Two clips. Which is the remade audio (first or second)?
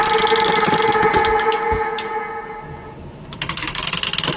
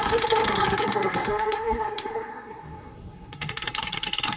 second